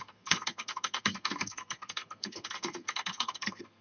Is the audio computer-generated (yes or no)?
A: yes